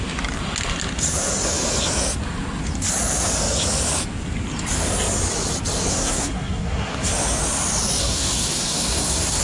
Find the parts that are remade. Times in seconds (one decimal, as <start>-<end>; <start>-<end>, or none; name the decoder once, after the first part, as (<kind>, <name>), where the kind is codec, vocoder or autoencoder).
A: 5.9-7.1 (codec, SNAC); 8.0-9.4

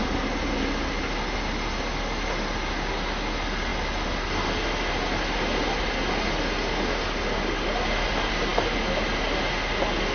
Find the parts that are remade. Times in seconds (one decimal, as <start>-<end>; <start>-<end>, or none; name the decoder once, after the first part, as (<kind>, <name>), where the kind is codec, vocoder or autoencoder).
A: none

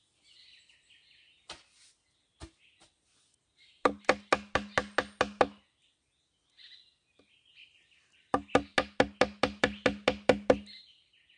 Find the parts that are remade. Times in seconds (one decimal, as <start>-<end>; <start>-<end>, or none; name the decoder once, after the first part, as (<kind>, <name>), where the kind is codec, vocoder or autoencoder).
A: none

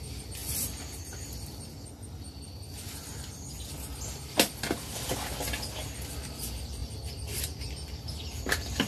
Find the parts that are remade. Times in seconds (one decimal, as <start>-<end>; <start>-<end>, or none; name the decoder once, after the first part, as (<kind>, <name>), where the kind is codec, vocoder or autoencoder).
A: none

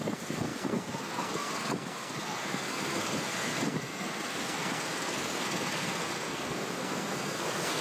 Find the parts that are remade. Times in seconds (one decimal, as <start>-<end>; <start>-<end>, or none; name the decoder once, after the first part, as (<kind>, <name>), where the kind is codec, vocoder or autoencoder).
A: 0.0-7.8 (codec, SNAC)

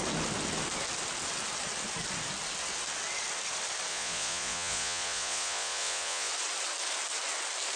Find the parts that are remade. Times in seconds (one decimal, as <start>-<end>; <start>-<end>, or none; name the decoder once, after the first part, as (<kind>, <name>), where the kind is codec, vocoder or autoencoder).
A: 3.9-6.3 (vocoder, Vocos)